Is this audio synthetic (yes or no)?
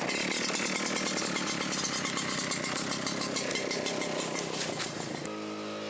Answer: no